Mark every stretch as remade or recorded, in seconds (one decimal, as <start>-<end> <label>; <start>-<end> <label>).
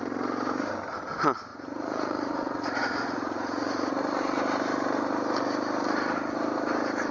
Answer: 0.0-1.5 recorded; 1.5-3.9 remade; 3.9-7.1 recorded